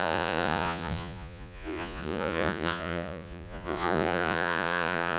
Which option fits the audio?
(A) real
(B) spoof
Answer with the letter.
B